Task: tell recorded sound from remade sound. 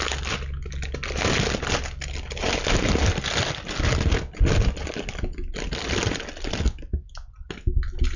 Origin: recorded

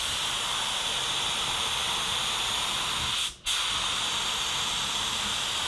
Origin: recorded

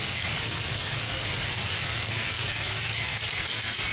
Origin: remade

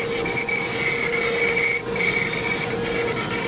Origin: recorded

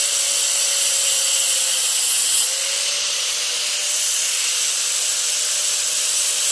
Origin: recorded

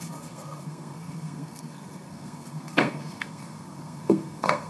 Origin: remade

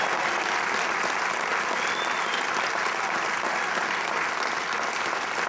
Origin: recorded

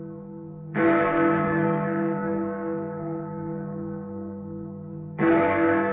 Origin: remade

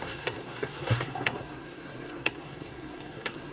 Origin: remade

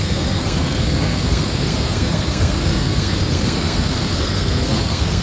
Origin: remade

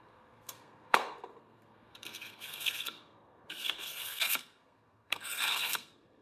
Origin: remade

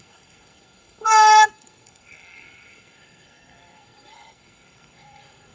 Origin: remade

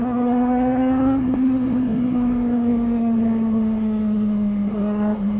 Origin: remade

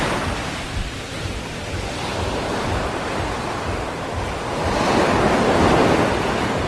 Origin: recorded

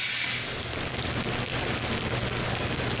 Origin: recorded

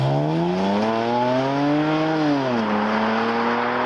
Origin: recorded